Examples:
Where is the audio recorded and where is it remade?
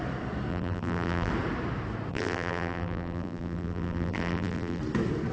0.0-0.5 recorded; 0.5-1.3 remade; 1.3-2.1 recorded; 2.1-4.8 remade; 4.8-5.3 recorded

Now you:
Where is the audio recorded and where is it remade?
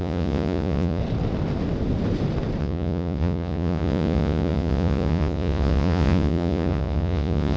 0.0-1.0 remade; 1.0-2.6 recorded; 2.6-7.6 remade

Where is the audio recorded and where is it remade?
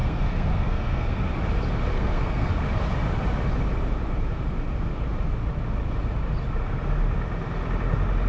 0.0-1.2 remade; 1.2-1.9 recorded; 1.9-2.5 remade; 2.5-8.3 recorded